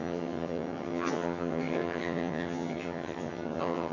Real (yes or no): no